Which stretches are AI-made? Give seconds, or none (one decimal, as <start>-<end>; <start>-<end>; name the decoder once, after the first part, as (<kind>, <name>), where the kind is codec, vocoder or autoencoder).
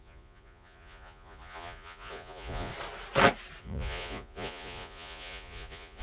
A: 0.0-2.7 (vocoder, Vocos); 3.6-6.0